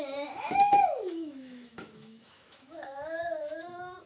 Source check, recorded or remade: remade